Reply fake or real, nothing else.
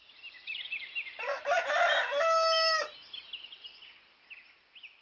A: real